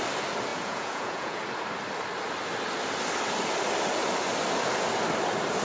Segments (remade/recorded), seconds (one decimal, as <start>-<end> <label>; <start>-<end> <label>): 0.0-0.5 recorded; 0.5-1.4 remade; 1.4-5.6 recorded